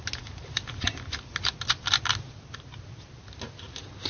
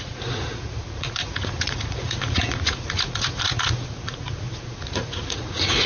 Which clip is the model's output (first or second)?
second